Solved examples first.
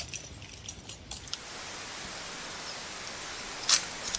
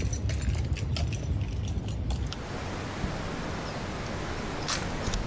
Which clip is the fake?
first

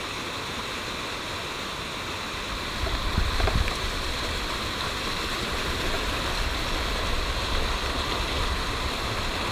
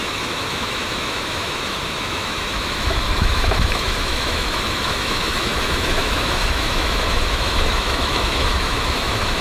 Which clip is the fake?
second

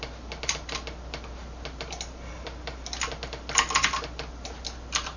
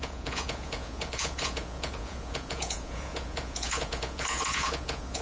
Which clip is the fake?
second